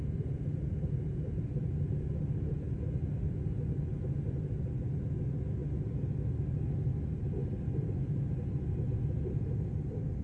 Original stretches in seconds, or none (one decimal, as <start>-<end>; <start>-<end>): 0.0-10.2